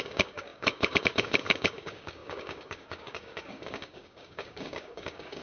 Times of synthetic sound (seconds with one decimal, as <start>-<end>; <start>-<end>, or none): 0.0-5.4